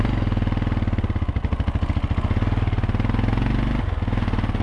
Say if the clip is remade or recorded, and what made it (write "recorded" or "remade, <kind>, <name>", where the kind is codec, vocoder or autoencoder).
recorded